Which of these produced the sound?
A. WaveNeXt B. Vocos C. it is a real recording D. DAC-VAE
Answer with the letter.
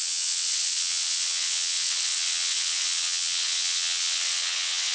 A